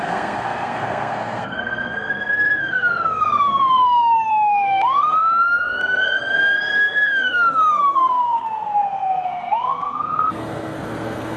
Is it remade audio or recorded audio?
remade